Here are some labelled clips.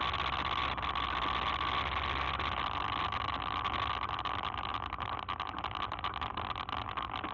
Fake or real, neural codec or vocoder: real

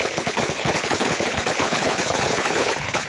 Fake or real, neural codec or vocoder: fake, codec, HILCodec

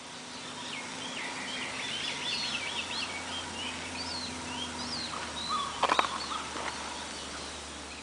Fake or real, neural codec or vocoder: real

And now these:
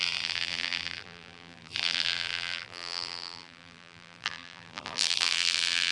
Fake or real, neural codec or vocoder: fake, vocoder, BigVGAN v2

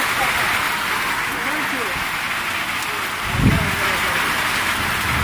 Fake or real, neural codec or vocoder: real